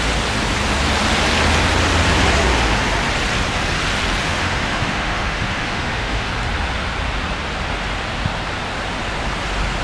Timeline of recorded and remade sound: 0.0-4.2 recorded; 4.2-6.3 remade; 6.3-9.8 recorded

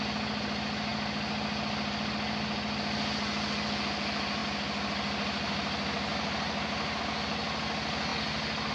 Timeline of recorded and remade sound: 0.0-8.7 recorded

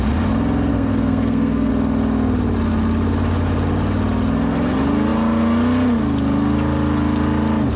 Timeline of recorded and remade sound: 0.0-0.7 recorded; 0.7-1.7 remade; 1.7-7.8 recorded

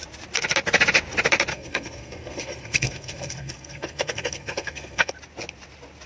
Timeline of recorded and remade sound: 0.0-1.5 recorded; 1.5-5.1 remade; 5.1-6.1 recorded

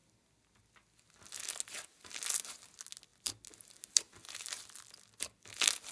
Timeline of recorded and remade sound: 0.0-5.9 recorded